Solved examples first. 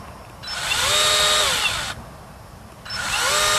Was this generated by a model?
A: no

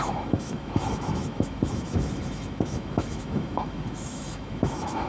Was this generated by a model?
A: yes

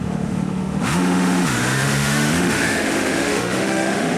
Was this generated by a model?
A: yes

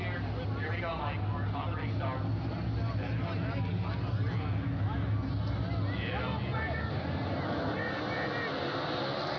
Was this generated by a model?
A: no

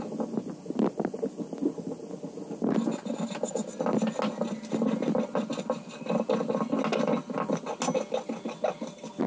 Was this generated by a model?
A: no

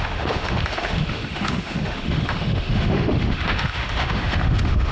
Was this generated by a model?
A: yes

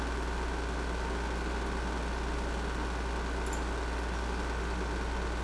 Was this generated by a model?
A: no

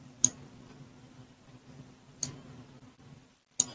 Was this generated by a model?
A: no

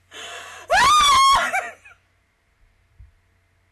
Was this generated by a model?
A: no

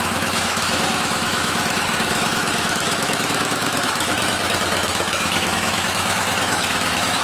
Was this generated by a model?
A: yes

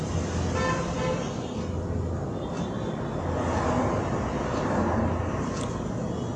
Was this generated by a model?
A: no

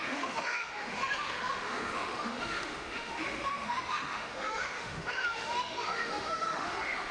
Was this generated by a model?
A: yes